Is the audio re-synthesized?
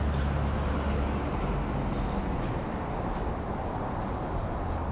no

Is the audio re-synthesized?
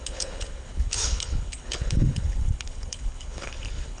yes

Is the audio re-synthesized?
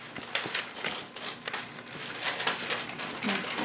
no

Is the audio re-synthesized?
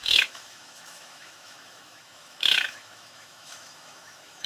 yes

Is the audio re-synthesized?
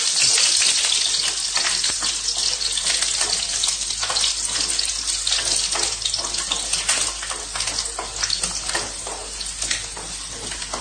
no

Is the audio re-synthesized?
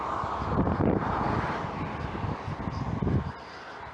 no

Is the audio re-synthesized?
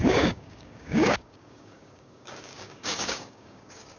yes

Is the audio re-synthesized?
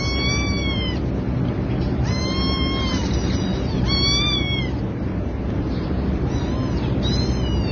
no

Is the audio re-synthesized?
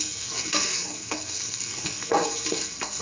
yes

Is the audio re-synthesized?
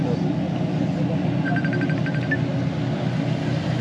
no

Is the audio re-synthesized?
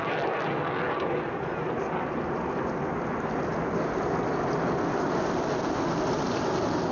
no